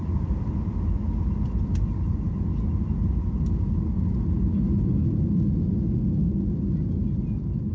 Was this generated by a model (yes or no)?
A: no